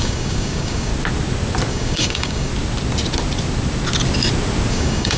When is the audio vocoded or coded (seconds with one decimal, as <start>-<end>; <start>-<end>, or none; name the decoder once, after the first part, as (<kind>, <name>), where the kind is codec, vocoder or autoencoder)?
0.0-0.9 (codec, DAC); 1.7-2.5; 4.7-5.2